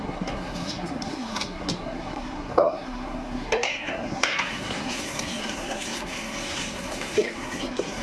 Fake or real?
fake